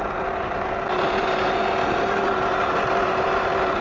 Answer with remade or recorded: recorded